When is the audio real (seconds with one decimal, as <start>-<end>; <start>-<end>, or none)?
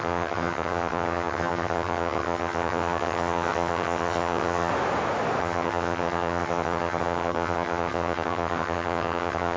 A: 4.7-5.4